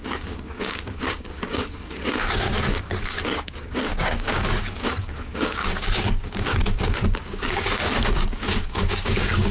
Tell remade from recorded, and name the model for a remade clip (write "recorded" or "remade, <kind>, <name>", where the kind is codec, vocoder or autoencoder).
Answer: remade, codec, DAC